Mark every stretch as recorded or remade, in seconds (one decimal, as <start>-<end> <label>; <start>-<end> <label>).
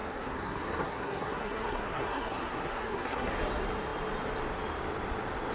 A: 0.0-3.3 remade; 3.3-5.5 recorded